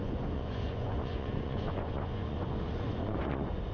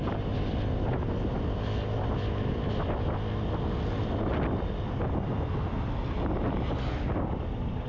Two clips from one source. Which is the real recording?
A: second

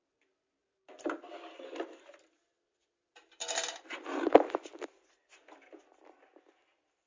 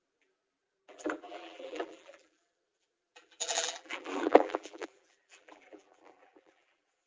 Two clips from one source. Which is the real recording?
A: first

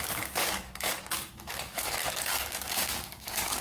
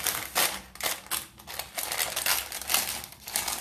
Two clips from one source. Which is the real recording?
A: second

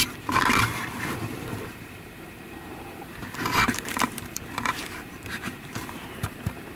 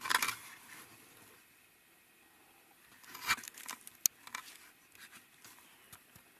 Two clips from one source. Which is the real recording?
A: second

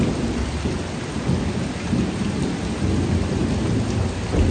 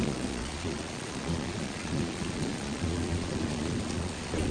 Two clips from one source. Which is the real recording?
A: first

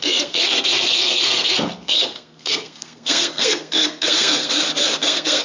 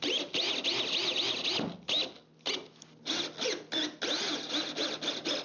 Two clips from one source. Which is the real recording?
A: second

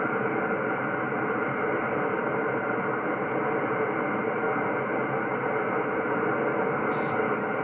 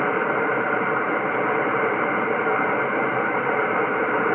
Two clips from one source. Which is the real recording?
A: first